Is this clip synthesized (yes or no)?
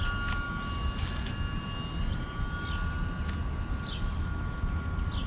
no